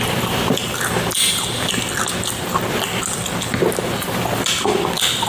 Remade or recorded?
recorded